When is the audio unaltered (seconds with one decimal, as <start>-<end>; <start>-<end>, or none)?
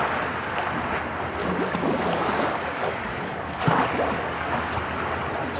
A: 0.0-1.4; 4.8-5.6